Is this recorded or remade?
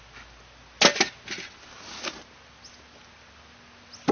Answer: recorded